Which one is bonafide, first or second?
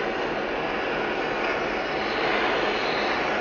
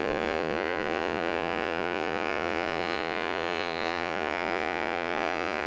first